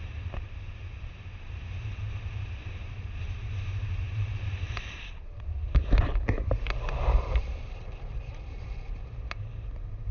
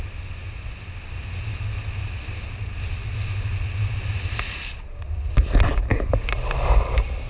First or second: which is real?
second